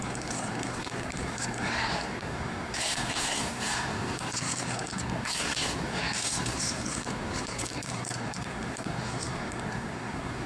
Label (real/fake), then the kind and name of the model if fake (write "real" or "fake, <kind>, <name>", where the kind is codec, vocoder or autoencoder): fake, codec, SNAC